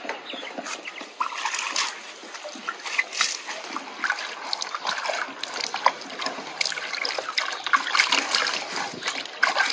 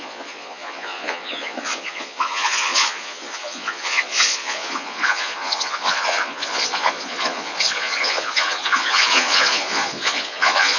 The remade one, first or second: second